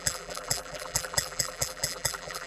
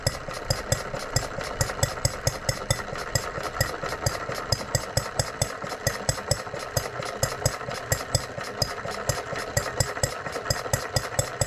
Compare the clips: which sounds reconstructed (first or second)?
first